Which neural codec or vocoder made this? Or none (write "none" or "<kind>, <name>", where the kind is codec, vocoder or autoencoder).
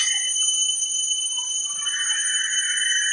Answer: none